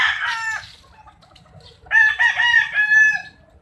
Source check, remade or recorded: recorded